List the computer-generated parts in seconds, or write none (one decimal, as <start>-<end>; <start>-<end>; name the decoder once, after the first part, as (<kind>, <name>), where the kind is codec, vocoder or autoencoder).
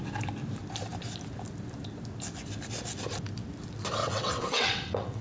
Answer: 4.0-5.2 (vocoder, WaveNeXt)